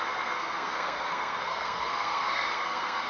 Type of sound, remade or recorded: remade